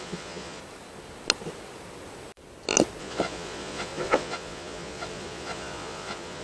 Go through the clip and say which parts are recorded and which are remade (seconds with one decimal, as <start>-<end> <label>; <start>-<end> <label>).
0.0-0.6 remade; 0.6-3.0 recorded; 3.0-6.4 remade